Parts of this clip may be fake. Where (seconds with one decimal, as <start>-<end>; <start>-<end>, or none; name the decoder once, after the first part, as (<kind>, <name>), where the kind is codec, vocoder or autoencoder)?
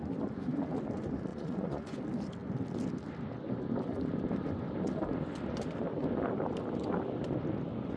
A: 1.3-2.0 (vocoder, Vocos)